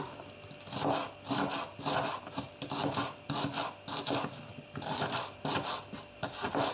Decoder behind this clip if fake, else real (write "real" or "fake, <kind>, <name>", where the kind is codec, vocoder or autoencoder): real